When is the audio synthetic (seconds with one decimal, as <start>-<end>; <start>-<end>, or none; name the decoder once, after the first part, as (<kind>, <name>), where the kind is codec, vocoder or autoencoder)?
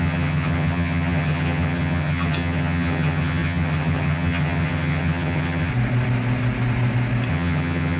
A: 0.0-5.7 (vocoder, HiFi-GAN); 7.3-8.0